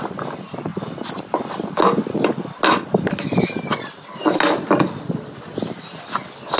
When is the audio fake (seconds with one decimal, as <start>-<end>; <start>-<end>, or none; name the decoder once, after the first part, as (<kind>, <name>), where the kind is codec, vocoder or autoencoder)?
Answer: none